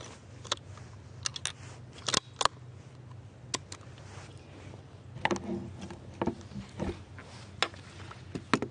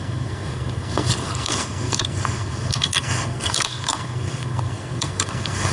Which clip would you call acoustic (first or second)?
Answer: first